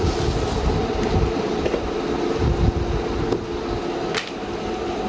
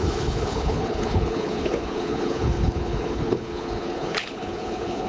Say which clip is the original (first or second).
first